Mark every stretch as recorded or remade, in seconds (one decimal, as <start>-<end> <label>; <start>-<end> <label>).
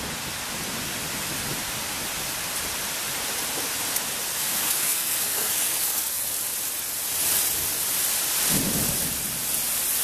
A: 0.0-4.3 recorded; 4.3-6.2 remade; 6.2-10.0 recorded